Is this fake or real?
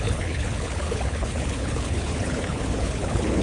fake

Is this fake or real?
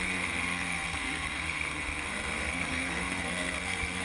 fake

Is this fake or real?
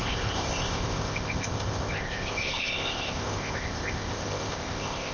fake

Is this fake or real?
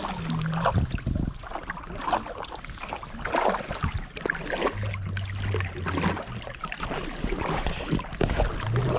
real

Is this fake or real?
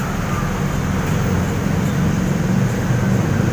real